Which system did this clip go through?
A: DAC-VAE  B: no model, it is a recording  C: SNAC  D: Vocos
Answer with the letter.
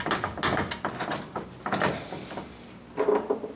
B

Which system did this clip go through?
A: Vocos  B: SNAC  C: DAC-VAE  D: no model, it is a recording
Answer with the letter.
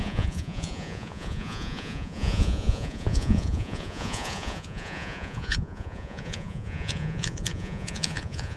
A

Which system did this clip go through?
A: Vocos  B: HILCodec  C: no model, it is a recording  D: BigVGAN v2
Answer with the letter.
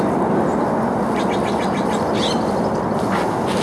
C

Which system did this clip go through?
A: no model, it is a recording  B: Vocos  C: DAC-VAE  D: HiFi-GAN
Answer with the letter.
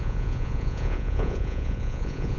B